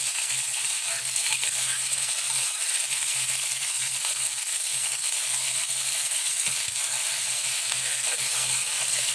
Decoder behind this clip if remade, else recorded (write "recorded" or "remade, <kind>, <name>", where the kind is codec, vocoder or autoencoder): remade, codec, SNAC